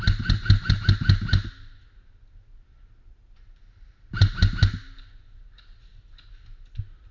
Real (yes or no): yes